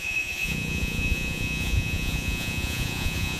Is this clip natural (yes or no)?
no